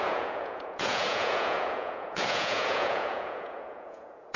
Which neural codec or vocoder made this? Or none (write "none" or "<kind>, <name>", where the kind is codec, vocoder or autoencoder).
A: vocoder, Vocos